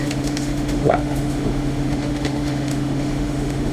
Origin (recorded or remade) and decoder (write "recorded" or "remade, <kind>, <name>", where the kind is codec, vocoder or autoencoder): remade, autoencoder, DAC-VAE